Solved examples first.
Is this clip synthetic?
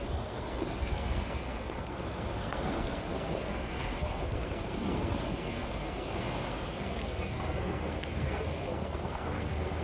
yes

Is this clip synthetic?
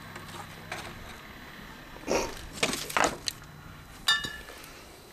no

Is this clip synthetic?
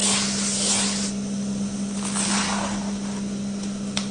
no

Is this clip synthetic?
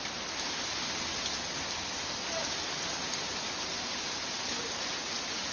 no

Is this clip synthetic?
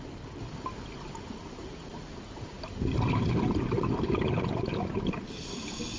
no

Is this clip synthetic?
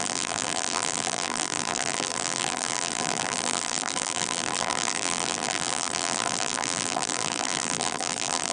yes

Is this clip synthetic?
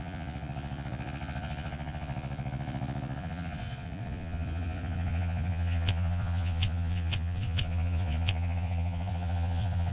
yes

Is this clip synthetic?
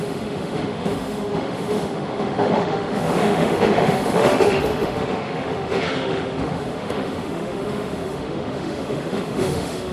yes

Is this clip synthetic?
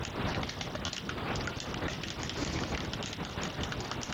no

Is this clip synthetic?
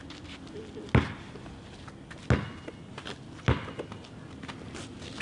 no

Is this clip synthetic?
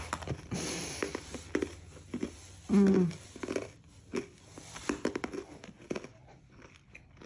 yes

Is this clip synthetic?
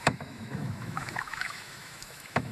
yes